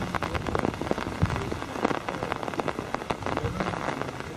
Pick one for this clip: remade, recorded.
recorded